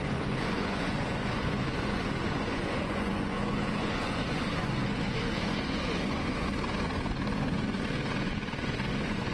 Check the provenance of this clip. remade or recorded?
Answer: remade